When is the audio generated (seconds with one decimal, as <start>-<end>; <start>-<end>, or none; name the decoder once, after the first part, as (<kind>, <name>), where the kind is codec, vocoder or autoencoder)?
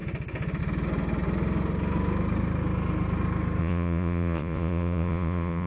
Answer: 3.6-5.7 (vocoder, Vocos)